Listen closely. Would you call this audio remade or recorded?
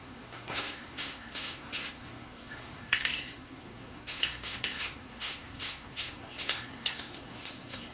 remade